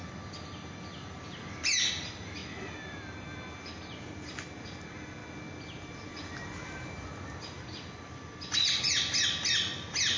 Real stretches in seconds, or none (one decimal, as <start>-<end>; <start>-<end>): 0.0-10.2